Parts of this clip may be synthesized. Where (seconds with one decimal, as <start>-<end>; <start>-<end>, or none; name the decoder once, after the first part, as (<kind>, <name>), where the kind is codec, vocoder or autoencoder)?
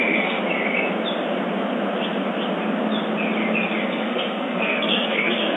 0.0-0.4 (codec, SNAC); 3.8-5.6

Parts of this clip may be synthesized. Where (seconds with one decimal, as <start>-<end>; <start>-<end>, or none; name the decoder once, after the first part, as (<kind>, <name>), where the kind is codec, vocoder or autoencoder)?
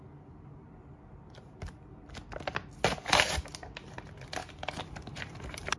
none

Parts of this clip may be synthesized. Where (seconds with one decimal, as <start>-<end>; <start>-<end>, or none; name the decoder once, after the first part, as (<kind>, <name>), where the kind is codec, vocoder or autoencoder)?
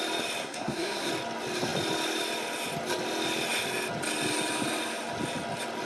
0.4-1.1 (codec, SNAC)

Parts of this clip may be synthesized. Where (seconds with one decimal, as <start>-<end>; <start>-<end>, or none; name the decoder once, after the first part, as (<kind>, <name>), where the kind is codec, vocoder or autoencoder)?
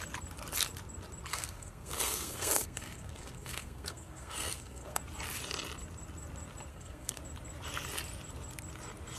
1.3-5.0 (codec, SNAC); 6.7-7.2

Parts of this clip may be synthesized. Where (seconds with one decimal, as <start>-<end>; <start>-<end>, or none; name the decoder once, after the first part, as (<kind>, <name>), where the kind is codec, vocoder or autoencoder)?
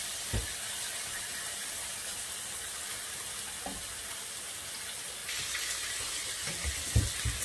none